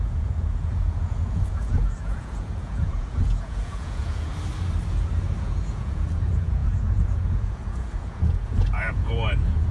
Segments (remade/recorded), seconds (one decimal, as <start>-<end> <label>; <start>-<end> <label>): 0.0-4.3 remade; 4.3-5.4 recorded; 5.4-9.7 remade